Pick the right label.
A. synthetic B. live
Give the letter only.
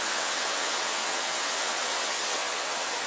A